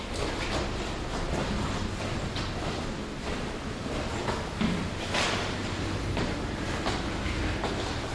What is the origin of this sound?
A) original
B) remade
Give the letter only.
A